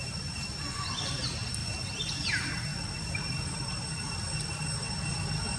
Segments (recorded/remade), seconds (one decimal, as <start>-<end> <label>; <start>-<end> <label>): 0.0-0.7 recorded; 0.7-1.2 remade; 1.2-5.6 recorded